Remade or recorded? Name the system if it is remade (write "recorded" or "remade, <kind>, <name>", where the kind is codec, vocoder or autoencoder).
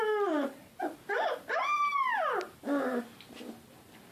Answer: recorded